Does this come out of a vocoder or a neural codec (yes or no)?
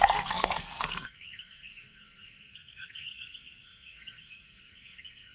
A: yes